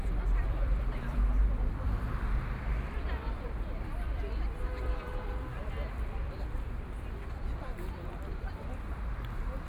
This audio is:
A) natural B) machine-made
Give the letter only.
B